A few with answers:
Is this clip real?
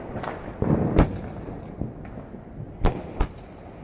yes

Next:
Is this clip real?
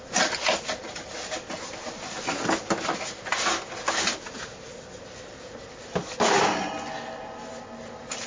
yes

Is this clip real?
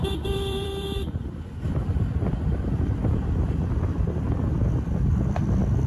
no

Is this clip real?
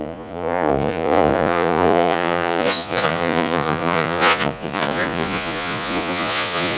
no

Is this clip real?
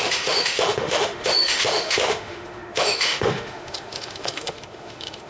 no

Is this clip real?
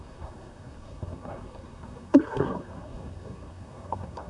no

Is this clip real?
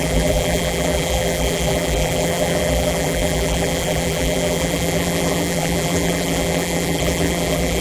no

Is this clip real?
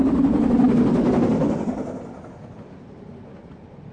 yes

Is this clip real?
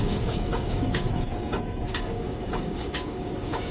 no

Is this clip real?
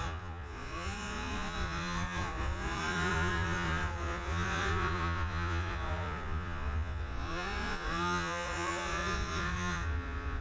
no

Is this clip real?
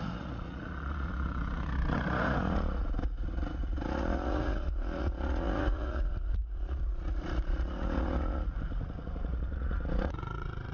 no